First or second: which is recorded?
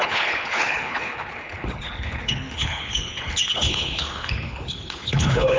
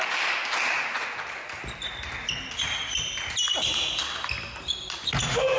second